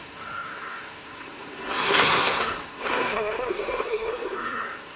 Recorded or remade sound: remade